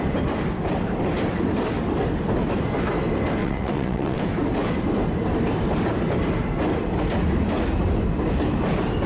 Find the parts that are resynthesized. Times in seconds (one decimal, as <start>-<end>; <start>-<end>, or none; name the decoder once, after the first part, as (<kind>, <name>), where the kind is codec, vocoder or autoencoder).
3.4-4.2 (vocoder, WaveNeXt)